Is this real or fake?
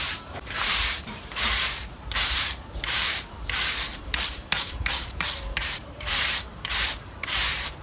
fake